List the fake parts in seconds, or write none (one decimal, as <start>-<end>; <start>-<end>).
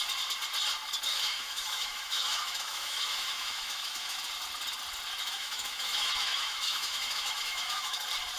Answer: 1.1-4.2; 5.2-8.0